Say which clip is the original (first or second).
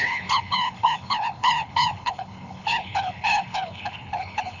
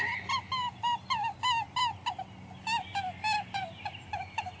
second